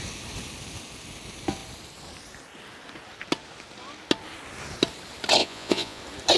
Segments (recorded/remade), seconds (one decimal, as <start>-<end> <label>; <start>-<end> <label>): 0.0-5.4 recorded; 5.4-6.0 remade; 6.0-6.4 recorded